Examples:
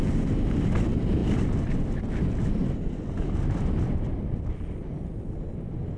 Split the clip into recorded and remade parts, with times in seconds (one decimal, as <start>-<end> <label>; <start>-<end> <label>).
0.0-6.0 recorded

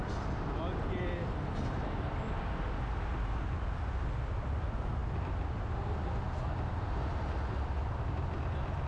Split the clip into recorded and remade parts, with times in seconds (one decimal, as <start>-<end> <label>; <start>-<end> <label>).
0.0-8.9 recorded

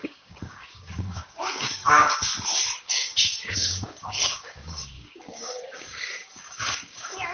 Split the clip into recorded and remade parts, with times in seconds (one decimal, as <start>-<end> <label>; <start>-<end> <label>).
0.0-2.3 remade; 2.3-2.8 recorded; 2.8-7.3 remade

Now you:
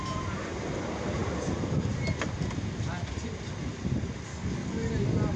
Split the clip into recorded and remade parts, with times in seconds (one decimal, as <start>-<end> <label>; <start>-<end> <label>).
0.0-4.3 recorded; 4.3-4.9 remade; 4.9-5.4 recorded

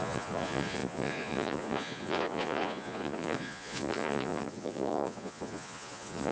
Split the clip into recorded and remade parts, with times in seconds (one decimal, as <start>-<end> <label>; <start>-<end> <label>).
0.0-6.3 remade

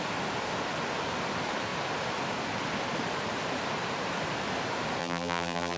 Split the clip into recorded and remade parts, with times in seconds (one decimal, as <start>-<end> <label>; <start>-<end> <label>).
0.0-5.0 recorded; 5.0-5.8 remade

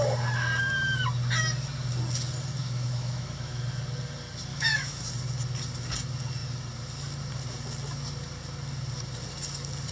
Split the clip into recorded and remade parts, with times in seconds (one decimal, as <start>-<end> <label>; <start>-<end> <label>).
0.0-2.6 recorded; 2.6-3.6 remade; 3.6-4.5 recorded; 4.5-5.0 remade; 5.0-9.9 recorded